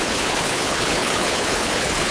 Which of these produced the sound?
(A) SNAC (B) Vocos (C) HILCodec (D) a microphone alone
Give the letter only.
C